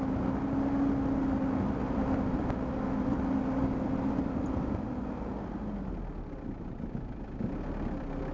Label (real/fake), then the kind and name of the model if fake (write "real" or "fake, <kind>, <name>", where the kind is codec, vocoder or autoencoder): real